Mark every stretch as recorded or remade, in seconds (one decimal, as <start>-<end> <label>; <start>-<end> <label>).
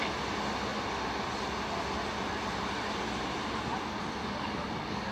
0.0-4.2 recorded; 4.2-5.1 remade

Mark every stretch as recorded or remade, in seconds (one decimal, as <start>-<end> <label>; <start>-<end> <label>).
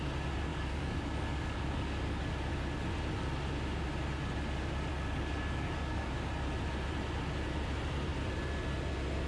0.0-0.5 recorded; 0.5-2.3 remade; 2.3-4.9 recorded; 4.9-6.1 remade; 6.1-9.3 recorded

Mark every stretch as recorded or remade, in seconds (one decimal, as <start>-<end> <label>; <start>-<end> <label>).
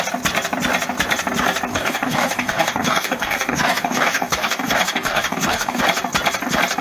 0.0-1.7 recorded; 1.7-5.8 remade; 5.8-6.8 recorded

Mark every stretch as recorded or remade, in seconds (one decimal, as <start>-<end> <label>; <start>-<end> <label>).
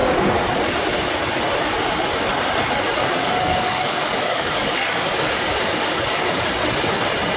0.0-3.0 recorded; 3.0-6.5 remade; 6.5-7.4 recorded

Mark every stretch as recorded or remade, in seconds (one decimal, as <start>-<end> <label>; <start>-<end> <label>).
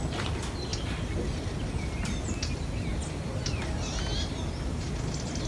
0.0-5.5 recorded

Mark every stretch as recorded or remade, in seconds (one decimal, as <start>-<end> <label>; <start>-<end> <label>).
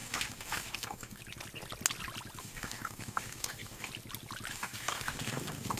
0.0-1.2 remade; 1.2-2.4 recorded; 2.4-3.9 remade; 3.9-4.5 recorded; 4.5-5.8 remade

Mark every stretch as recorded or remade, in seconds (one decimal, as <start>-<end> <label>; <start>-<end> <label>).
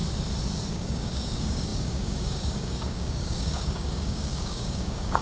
0.0-0.7 recorded; 0.7-5.2 remade